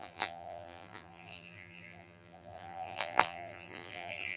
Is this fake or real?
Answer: fake